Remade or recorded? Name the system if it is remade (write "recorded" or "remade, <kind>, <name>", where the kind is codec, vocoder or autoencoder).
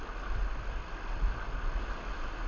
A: recorded